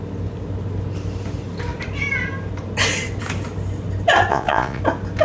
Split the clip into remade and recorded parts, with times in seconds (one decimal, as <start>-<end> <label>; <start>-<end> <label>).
0.0-4.3 recorded; 4.3-4.8 remade; 4.8-5.2 recorded